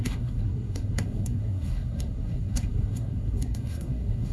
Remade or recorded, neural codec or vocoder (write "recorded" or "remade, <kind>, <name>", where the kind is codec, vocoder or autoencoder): remade, codec, SNAC